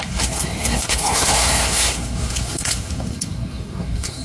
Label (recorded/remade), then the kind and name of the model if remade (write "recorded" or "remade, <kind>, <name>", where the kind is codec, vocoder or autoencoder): remade, codec, SNAC